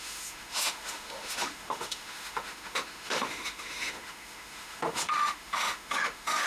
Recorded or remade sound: remade